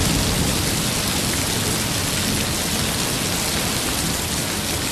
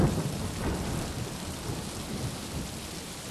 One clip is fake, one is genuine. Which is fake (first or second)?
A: second